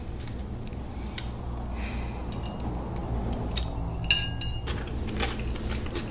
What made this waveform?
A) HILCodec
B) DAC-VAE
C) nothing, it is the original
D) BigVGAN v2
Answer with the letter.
C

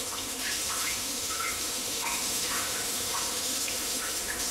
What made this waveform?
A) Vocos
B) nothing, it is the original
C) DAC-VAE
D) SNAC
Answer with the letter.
C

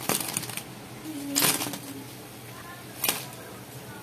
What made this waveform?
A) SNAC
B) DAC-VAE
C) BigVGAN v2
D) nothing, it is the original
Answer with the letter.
D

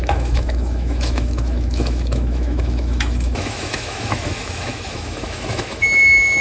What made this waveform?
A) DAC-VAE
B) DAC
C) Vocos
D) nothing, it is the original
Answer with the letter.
A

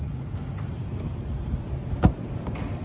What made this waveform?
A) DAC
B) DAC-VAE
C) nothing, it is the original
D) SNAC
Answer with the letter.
C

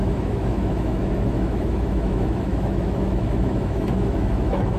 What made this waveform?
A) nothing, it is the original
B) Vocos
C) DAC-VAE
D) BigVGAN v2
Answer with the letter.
C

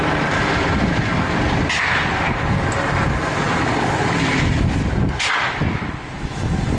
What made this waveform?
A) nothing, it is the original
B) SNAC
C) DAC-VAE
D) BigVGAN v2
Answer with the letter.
A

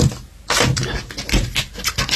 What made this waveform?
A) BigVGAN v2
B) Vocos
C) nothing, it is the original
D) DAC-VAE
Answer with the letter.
C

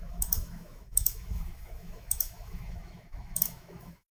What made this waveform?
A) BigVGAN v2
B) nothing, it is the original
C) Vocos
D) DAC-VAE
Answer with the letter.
D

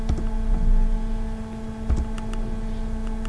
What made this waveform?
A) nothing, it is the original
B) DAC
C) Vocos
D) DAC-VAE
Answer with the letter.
A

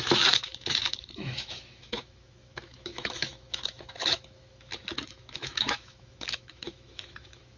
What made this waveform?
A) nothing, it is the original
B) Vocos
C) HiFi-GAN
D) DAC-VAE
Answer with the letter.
D